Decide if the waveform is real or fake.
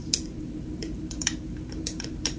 fake